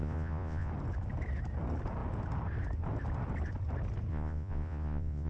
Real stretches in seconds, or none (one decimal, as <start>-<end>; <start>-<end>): 0.7-4.1